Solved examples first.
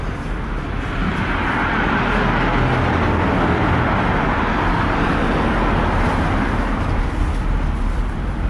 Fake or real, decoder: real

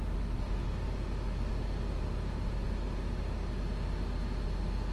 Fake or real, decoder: real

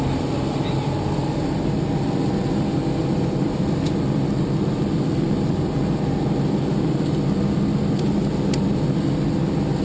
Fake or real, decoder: real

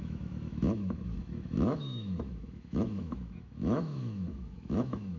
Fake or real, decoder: fake, autoencoder, DAC-VAE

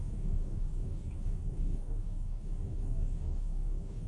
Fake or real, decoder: fake, codec, DAC